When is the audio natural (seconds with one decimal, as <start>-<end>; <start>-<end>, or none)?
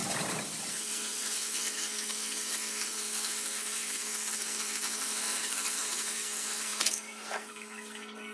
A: 0.0-0.7